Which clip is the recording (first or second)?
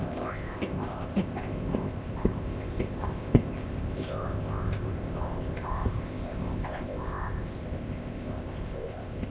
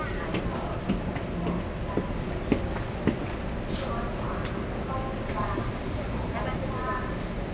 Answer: second